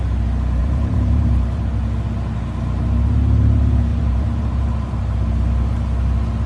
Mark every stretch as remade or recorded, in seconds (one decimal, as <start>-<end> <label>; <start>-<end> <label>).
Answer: 0.0-0.6 recorded; 0.6-1.7 remade; 1.7-3.9 recorded; 3.9-5.0 remade; 5.0-6.5 recorded